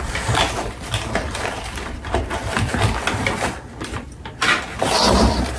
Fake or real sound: real